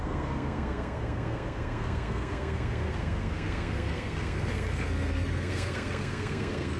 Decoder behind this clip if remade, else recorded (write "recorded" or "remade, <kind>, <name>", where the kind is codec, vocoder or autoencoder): remade, codec, SNAC